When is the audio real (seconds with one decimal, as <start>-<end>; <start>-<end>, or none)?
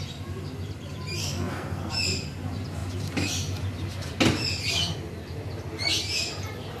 0.0-1.2; 1.9-6.8